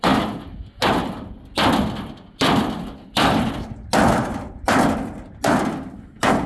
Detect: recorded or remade recorded